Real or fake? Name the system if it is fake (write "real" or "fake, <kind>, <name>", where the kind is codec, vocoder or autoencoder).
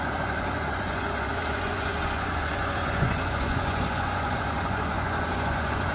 fake, vocoder, Vocos